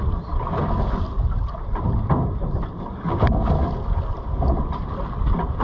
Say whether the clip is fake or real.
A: real